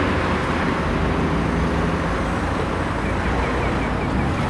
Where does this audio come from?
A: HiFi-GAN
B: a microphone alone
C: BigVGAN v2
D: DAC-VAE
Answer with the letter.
B